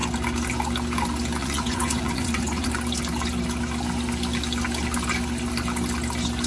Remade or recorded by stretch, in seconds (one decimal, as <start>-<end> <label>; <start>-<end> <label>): 0.0-1.4 recorded; 1.4-2.7 remade; 2.7-6.5 recorded

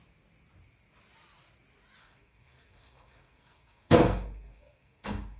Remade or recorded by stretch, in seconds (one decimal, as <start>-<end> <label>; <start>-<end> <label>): 0.0-2.0 recorded; 2.0-5.4 remade

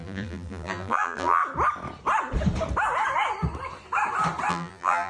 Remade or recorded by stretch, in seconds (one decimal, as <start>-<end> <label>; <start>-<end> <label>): 0.0-1.4 remade; 1.4-4.5 recorded; 4.5-5.1 remade

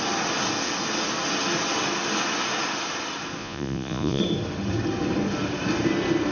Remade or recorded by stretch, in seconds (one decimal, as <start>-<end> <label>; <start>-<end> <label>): 0.0-3.4 recorded; 3.4-4.2 remade; 4.2-6.3 recorded

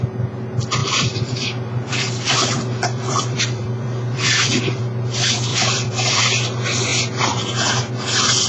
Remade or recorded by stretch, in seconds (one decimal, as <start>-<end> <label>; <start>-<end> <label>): 0.0-0.8 recorded; 0.8-4.8 remade; 4.8-5.5 recorded; 5.5-6.2 remade; 6.2-8.5 recorded